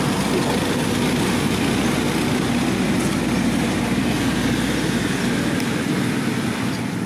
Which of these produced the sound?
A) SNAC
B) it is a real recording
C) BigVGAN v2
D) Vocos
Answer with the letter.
B